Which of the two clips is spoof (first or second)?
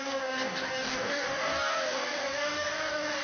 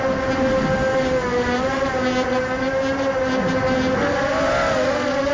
first